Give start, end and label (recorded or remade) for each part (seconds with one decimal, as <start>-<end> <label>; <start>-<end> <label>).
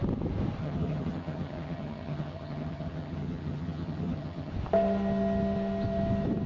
0.0-0.6 recorded; 0.6-4.5 remade; 4.5-6.5 recorded